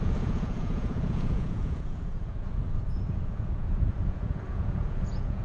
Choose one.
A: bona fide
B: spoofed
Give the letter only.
B